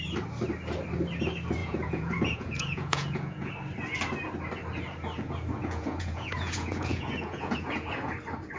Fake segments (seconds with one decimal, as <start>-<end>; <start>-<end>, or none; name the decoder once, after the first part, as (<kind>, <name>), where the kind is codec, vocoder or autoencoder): 1.6-3.5 (vocoder, Vocos); 5.6-8.1